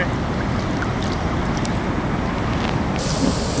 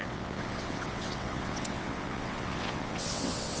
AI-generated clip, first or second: second